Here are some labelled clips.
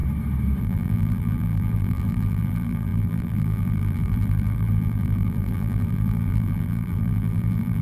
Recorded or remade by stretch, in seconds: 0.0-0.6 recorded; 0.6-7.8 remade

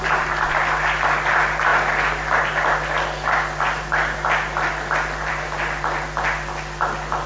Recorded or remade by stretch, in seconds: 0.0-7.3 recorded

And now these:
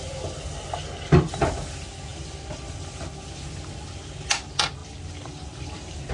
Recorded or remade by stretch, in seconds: 0.0-2.1 recorded; 2.1-3.4 remade; 3.4-4.8 recorded; 4.8-6.1 remade

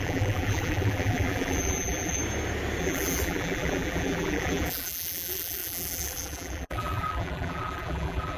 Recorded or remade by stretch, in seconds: 0.0-2.2 remade; 2.2-2.8 recorded; 2.8-8.4 remade